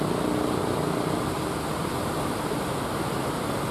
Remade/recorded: recorded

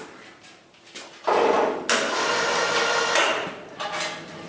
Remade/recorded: recorded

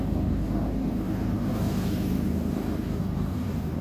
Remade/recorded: remade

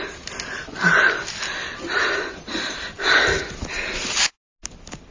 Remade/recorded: recorded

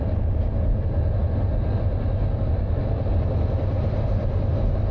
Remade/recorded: recorded